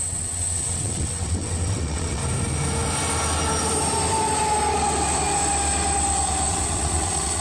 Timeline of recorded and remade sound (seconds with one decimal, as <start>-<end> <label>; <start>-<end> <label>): 0.0-2.2 remade; 2.2-6.5 recorded; 6.5-7.4 remade